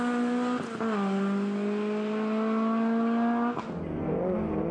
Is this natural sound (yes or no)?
yes